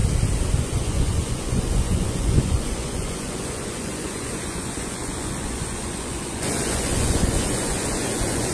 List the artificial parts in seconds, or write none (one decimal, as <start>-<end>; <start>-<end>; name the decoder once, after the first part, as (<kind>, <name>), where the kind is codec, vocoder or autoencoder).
0.6-8.5 (vocoder, Vocos)